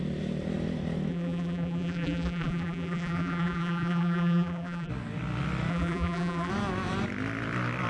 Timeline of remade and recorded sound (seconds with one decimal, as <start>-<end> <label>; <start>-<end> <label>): 0.0-1.1 recorded; 1.1-4.9 remade; 4.9-5.7 recorded; 5.7-6.5 remade; 6.5-7.9 recorded